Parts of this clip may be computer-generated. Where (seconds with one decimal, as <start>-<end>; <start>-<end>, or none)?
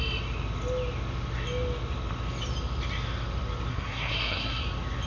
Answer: 3.7-4.6